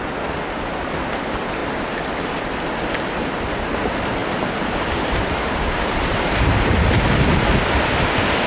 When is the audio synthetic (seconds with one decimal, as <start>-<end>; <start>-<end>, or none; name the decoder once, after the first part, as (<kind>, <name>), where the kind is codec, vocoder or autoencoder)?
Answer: 4.2-6.7 (vocoder, BigVGAN v2)